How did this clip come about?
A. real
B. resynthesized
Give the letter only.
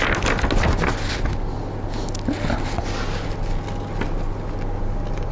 A